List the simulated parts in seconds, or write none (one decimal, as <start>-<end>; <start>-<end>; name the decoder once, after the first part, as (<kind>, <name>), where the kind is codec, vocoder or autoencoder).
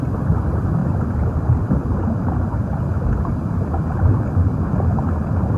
none